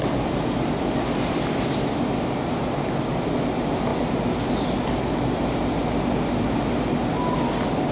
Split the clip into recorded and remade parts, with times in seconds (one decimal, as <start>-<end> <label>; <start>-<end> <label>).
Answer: 0.0-7.9 recorded